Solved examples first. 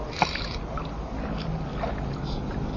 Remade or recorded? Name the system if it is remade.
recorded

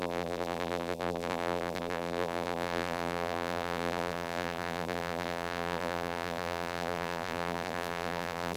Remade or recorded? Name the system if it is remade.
remade, vocoder, BigVGAN v2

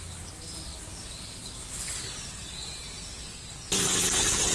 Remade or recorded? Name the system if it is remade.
recorded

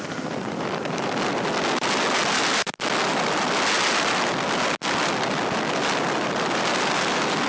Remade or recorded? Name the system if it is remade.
recorded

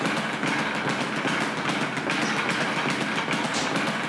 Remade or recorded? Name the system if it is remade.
recorded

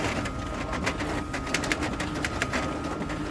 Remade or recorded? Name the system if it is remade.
recorded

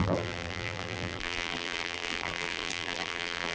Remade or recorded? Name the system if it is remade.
remade, vocoder, BigVGAN v2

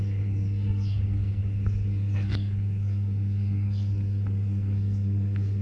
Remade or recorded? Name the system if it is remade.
remade, codec, SNAC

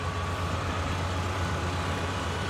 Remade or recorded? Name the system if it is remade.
remade, vocoder, BigVGAN v2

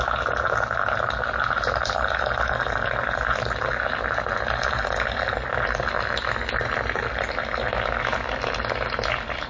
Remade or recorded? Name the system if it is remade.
recorded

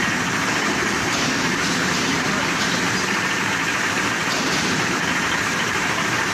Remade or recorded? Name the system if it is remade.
remade, vocoder, BigVGAN v2